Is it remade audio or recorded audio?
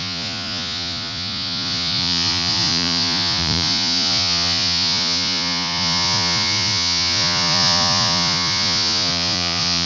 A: remade